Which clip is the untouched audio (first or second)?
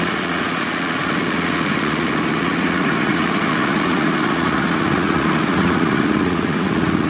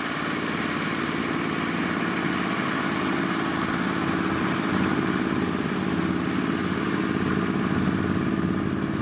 second